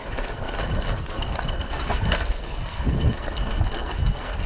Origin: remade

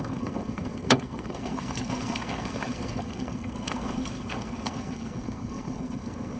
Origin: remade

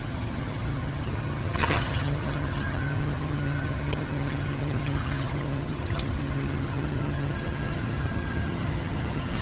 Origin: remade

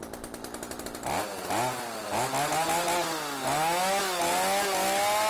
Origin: recorded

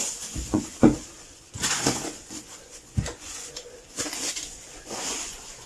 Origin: remade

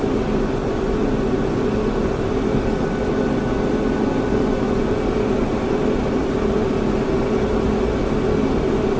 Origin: recorded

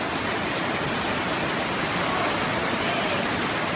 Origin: recorded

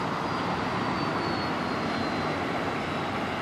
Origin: recorded